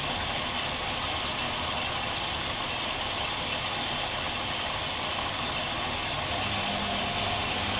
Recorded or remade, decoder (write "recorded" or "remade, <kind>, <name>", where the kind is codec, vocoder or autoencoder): recorded